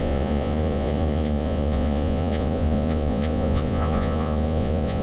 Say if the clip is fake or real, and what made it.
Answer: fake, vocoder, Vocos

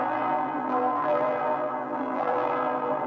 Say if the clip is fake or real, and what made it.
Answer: fake, vocoder, BigVGAN v2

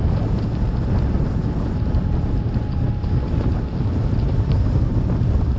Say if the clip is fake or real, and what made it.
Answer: real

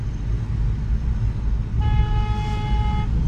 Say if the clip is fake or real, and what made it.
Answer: real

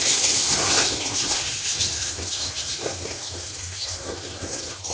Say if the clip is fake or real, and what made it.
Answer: fake, codec, SNAC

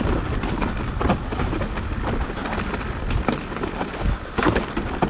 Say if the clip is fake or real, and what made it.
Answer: real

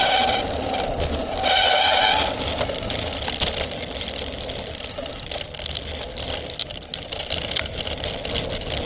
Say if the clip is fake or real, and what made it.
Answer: real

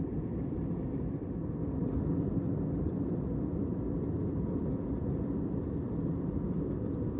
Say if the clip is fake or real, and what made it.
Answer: fake, vocoder, BigVGAN v2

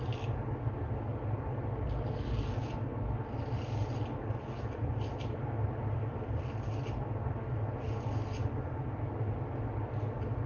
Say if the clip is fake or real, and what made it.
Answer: real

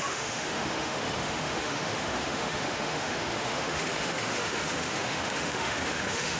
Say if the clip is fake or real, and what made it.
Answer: fake, autoencoder, DAC-VAE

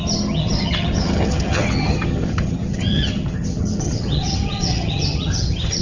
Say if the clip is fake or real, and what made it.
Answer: fake, vocoder, HiFi-GAN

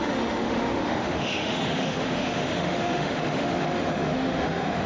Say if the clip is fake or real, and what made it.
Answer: fake, autoencoder, DAC-VAE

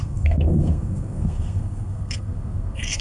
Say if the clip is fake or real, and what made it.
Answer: fake, codec, SNAC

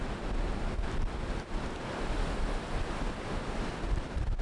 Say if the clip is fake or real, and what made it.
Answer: real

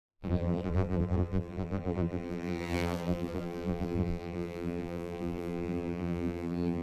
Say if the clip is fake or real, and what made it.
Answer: fake, vocoder, BigVGAN v2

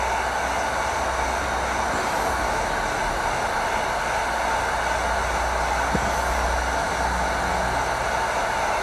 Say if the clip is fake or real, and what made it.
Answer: real